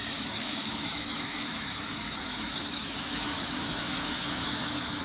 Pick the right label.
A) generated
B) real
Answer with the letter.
A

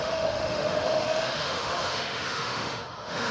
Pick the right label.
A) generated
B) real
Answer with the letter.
A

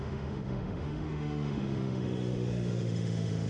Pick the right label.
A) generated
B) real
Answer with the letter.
A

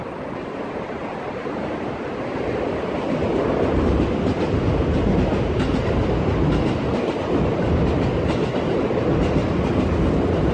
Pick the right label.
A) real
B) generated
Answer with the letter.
A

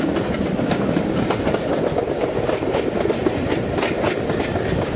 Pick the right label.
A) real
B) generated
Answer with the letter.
A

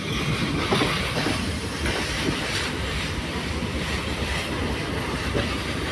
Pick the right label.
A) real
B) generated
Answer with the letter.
A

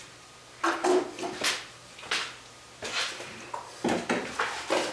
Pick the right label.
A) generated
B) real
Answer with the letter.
B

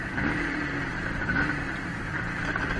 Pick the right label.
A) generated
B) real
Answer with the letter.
B